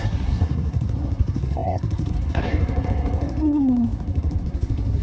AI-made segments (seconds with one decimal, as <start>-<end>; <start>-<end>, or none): 0.0-5.0